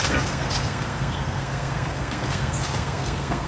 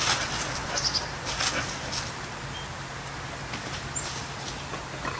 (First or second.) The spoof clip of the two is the first